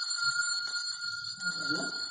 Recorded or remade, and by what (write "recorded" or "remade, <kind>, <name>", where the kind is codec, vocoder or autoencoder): recorded